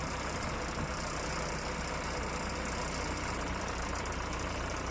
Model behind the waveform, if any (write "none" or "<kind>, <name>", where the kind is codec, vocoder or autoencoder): none